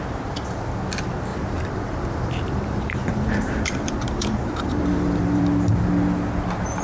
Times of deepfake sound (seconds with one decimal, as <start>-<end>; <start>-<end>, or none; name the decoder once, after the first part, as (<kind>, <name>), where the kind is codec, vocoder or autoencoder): 1.3-5.4 (vocoder, BigVGAN v2)